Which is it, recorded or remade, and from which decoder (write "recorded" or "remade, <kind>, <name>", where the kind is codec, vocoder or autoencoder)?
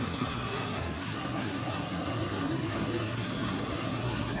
remade, codec, SNAC